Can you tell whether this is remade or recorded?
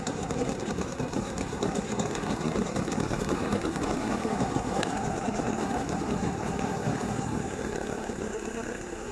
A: remade